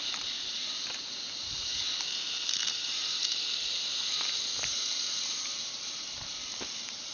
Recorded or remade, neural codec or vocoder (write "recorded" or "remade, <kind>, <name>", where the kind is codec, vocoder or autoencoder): remade, vocoder, BigVGAN v2